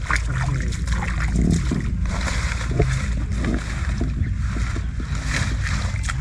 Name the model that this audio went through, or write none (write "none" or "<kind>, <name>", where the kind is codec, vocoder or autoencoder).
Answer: none